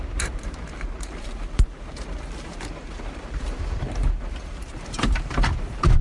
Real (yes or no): no